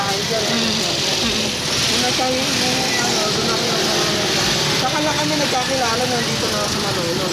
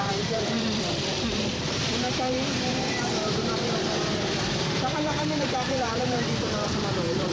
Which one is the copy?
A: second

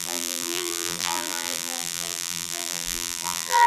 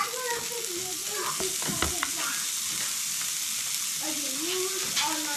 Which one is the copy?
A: first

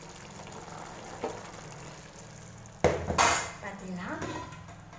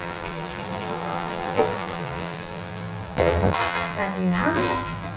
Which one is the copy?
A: second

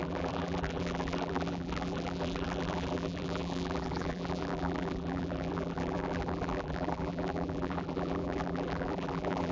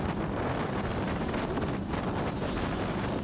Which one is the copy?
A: first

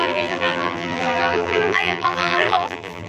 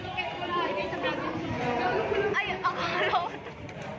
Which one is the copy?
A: first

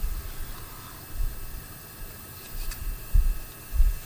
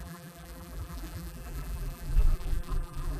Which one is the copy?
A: second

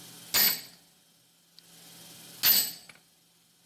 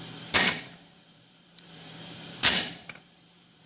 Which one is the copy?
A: second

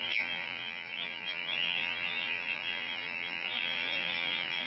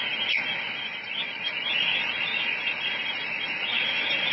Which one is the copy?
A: first